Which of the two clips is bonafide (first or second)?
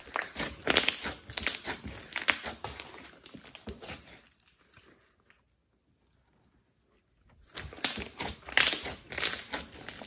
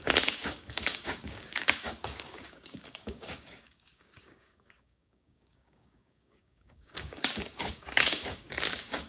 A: first